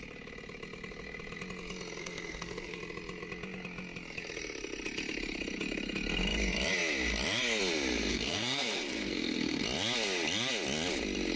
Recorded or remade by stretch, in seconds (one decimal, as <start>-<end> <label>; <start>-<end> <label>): 0.0-2.0 recorded; 2.0-2.8 remade; 2.8-8.1 recorded; 8.1-9.6 remade; 9.6-11.4 recorded